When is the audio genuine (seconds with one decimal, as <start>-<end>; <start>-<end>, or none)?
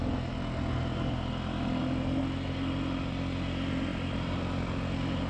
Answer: 0.0-5.3